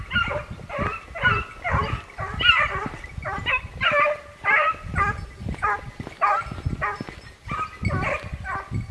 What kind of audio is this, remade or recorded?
recorded